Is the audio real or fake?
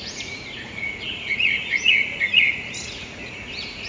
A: fake